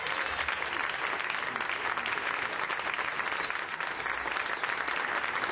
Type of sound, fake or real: real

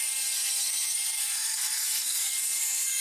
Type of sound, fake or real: fake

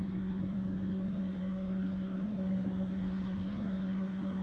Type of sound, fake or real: fake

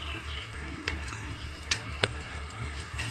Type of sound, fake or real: fake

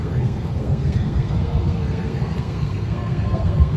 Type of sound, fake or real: fake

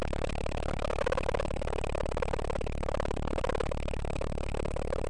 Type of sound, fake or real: real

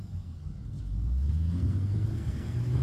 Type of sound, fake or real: fake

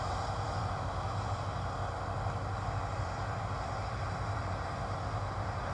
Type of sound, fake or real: real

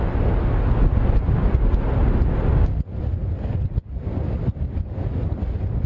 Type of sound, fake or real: real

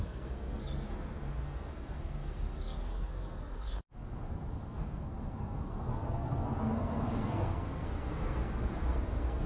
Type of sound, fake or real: fake